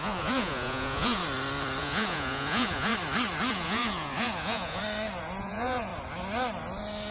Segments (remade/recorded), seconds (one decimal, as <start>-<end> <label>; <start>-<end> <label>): 0.0-1.2 remade; 1.2-1.8 recorded; 1.8-2.9 remade; 2.9-3.5 recorded; 3.5-4.8 remade; 4.8-5.4 recorded; 5.4-5.9 remade; 5.9-7.1 recorded